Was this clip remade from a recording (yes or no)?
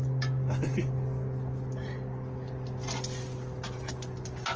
no